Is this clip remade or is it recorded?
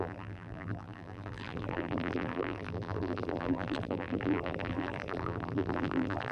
remade